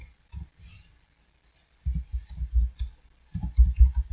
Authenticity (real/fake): real